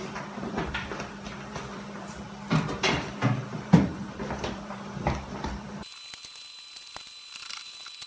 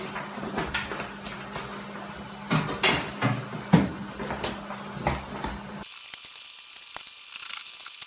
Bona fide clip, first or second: second